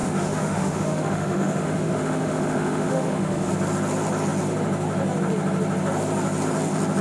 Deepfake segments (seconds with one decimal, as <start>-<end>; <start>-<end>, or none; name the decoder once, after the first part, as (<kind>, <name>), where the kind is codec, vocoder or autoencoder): 0.0-3.5 (autoencoder, DAC-VAE)